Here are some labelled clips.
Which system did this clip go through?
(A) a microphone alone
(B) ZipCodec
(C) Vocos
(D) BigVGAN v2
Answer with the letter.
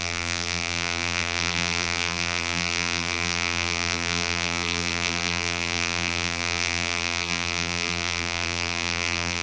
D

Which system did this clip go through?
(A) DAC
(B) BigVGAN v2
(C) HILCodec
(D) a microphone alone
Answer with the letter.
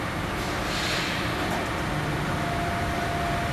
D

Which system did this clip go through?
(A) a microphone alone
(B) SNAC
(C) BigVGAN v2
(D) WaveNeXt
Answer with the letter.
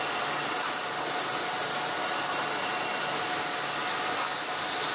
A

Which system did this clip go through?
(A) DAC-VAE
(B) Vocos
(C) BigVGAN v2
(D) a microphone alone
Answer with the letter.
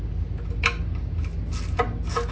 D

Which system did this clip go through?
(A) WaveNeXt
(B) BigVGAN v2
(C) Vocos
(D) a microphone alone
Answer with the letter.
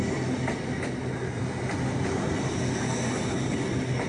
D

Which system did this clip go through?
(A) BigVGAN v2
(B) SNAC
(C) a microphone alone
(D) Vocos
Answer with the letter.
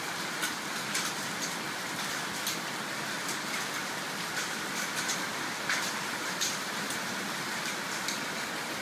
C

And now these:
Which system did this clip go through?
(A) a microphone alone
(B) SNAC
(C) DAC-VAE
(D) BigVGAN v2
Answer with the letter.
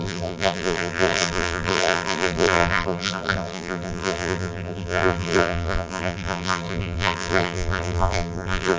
D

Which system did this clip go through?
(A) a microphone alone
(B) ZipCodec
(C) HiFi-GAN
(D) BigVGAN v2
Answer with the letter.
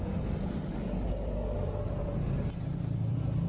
A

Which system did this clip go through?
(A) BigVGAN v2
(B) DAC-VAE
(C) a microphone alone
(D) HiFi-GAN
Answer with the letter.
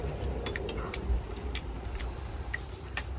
A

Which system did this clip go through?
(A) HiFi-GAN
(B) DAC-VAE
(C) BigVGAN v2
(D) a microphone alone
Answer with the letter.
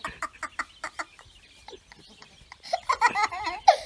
D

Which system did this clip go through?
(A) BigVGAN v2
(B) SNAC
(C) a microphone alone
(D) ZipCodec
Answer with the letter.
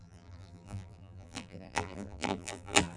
A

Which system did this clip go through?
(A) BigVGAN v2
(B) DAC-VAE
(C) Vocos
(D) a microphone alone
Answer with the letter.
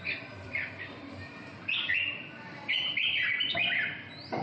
A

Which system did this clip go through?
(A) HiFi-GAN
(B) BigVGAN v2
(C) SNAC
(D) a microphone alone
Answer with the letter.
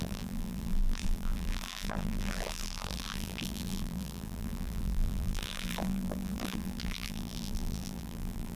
B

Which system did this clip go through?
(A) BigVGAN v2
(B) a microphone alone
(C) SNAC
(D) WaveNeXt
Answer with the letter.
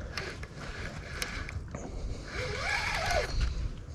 A